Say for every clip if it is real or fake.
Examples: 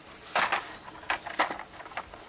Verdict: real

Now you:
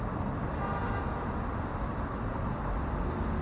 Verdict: real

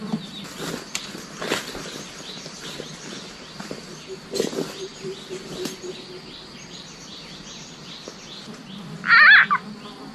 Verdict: real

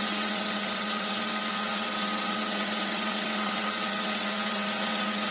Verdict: fake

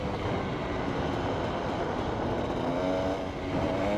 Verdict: real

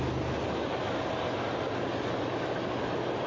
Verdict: real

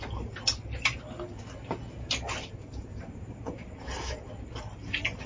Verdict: real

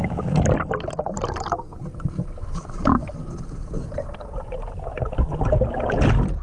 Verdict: real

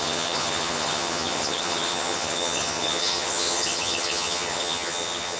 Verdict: fake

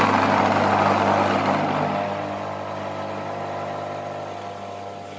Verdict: real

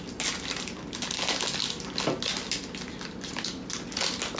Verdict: real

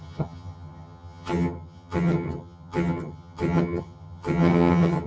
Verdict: fake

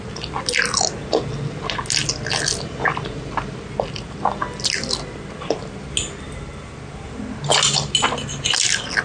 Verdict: real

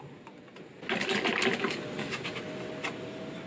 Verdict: real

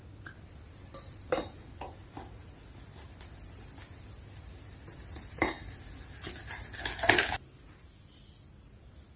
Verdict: real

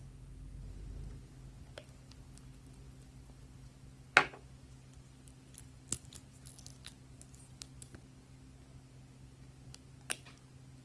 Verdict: real